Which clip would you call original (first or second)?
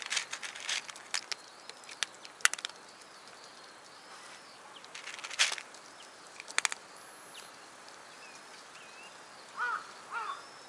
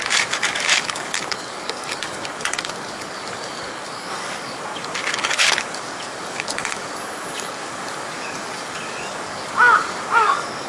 first